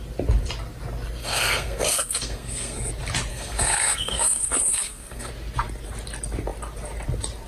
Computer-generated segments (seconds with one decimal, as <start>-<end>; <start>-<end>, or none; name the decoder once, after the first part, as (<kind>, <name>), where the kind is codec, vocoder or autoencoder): 1.2-2.9 (codec, SNAC); 3.3-5.3